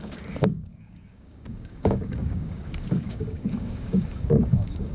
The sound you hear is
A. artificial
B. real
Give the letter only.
A